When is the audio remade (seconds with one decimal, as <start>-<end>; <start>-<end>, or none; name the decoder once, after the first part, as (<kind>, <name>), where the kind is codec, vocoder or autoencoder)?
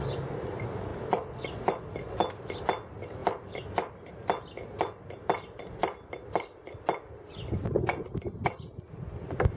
none